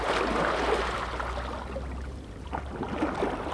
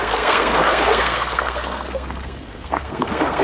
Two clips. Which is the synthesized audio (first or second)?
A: second